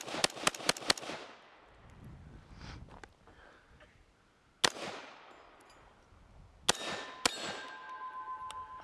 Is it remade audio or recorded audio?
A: recorded